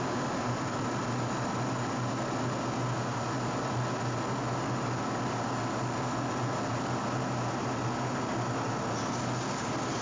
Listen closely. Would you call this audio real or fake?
real